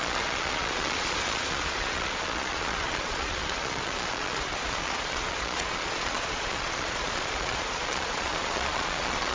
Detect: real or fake fake